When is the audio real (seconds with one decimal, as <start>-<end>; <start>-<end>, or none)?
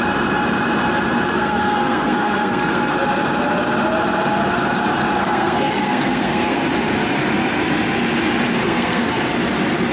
0.0-1.3; 2.9-5.2; 6.7-8.6; 9.1-9.9